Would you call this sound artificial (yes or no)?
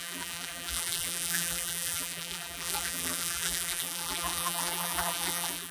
yes